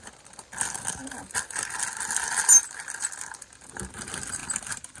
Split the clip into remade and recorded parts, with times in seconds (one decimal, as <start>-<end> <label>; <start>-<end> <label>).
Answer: 0.0-5.0 recorded